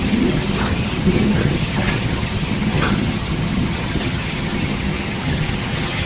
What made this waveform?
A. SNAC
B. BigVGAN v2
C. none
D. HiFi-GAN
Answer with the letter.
D